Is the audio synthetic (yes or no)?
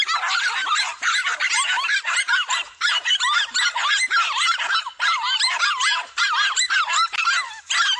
no